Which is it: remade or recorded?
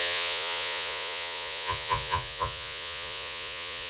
remade